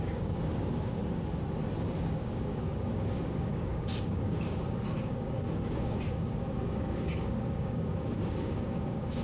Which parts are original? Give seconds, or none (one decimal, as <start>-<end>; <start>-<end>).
1.0-2.0